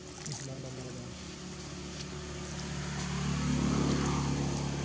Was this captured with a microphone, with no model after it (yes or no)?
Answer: yes